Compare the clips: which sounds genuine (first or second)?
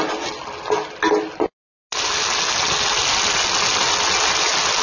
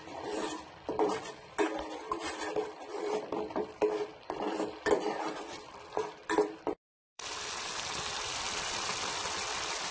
first